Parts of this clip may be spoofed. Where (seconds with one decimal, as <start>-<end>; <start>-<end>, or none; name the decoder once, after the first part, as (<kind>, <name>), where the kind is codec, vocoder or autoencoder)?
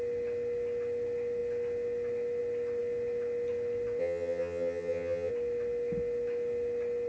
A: 4.0-5.3 (vocoder, HiFi-GAN)